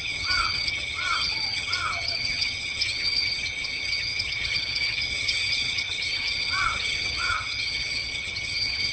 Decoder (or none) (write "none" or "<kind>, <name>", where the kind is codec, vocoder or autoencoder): vocoder, HiFi-GAN